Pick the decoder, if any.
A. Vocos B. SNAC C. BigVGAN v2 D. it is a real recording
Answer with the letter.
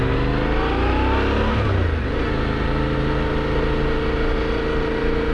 D